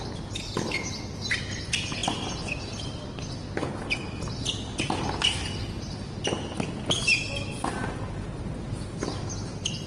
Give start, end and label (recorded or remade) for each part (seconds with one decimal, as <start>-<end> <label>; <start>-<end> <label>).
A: 0.0-9.9 recorded